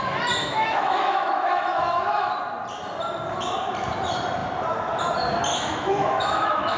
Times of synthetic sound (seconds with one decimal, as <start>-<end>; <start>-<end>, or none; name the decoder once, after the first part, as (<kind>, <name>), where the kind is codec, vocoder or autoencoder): 0.4-2.4 (autoencoder, DAC-VAE); 5.5-6.8